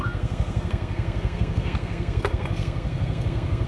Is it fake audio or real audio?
fake